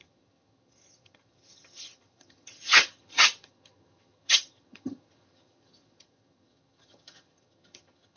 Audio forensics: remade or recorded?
remade